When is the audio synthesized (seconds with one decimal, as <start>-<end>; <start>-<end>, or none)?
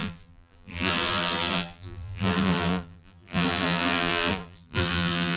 0.0-5.4